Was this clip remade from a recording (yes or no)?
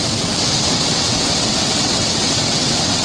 yes